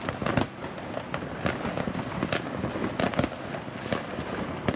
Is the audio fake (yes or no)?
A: no